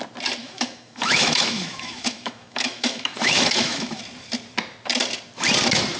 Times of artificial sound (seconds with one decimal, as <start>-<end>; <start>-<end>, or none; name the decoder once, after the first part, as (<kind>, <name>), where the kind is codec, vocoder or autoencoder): 0.4-4.0 (autoencoder, DAC-VAE)